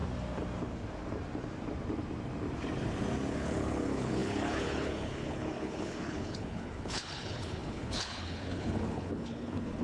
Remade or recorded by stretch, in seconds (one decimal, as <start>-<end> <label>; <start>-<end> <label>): 0.0-3.3 recorded; 3.3-9.8 remade